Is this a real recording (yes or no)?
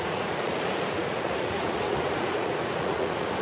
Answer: no